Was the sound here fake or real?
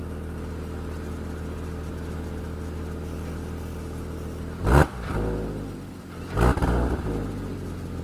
real